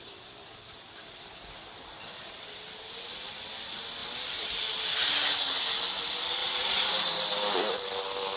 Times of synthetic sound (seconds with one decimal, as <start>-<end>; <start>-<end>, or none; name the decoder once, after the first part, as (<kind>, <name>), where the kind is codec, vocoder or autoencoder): 6.4-6.9 (vocoder, Vocos)